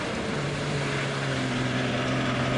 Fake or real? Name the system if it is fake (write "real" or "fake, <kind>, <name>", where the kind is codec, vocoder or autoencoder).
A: real